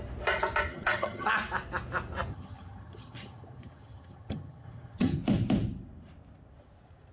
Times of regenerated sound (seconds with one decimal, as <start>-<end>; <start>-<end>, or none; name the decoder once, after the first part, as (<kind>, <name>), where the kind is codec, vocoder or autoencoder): 0.7-1.3 (vocoder, HiFi-GAN); 2.3-5.2